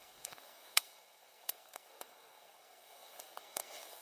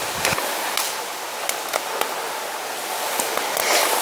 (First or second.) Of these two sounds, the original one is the second